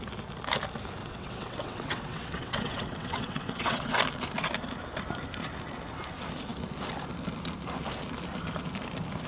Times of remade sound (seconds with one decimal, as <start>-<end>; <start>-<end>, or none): 1.0-4.0